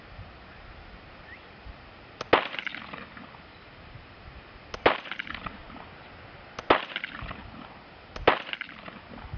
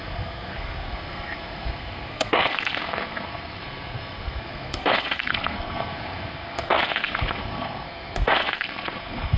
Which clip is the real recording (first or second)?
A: first